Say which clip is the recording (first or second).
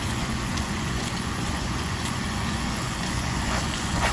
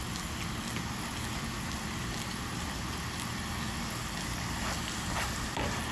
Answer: second